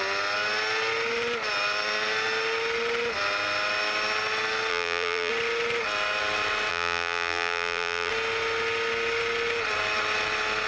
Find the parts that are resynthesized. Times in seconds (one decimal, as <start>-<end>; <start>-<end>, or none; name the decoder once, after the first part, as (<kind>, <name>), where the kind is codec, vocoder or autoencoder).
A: 4.7-5.3 (vocoder, BigVGAN v2); 6.7-8.1